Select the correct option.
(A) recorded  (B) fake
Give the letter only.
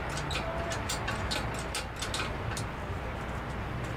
A